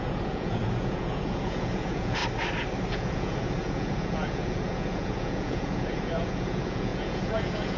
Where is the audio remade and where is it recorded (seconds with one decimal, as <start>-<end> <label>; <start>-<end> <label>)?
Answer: 0.0-2.2 remade; 2.2-2.9 recorded; 2.9-7.8 remade